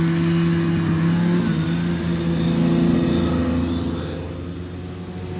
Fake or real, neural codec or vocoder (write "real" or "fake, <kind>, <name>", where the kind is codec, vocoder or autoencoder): real